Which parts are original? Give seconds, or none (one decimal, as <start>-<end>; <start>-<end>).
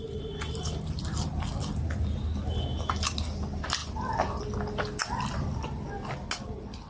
0.0-5.0; 5.5-6.9